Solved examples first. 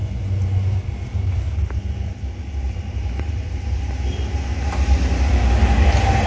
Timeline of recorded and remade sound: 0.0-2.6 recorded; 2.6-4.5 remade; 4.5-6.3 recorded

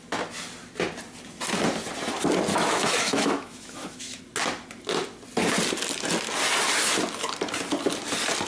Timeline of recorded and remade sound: 0.0-2.5 recorded; 2.5-4.2 remade; 4.2-8.5 recorded

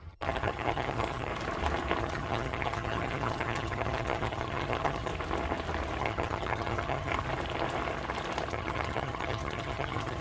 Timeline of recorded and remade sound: 0.0-1.3 remade; 1.3-2.0 recorded; 2.0-5.1 remade; 5.1-6.0 recorded; 6.0-7.1 remade; 7.1-8.5 recorded; 8.5-10.2 remade

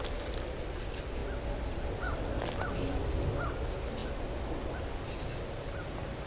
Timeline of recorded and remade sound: 0.0-6.3 recorded

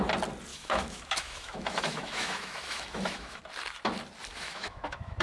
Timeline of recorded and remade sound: 0.0-0.5 recorded; 0.5-3.4 remade; 3.4-4.3 recorded; 4.3-5.2 remade

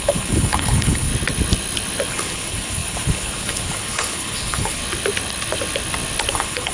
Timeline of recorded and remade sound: 0.0-1.1 remade; 1.1-2.1 recorded; 2.1-4.8 remade; 4.8-6.3 recorded; 6.3-6.7 remade

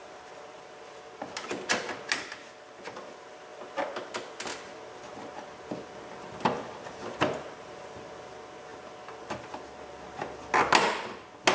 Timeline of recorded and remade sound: 0.0-11.5 recorded